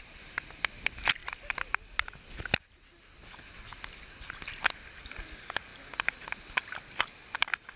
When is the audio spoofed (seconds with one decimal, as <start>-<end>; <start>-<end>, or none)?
none